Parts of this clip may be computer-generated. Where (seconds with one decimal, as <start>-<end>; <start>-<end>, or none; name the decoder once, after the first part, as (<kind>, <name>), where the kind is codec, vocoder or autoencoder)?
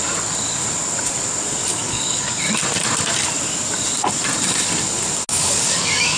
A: 1.7-2.4 (codec, DAC); 5.3-6.2